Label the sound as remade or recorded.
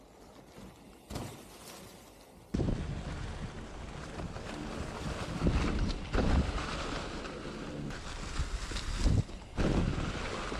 recorded